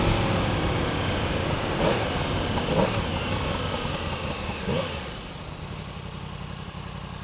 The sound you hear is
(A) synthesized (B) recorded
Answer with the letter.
B